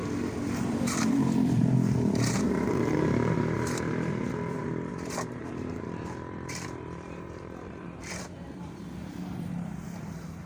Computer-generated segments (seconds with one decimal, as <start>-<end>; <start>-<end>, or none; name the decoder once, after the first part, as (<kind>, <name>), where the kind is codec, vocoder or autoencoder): 0.6-10.5 (vocoder, BigVGAN v2)